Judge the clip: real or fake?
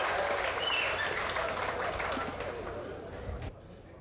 real